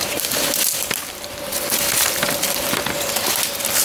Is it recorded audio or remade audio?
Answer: recorded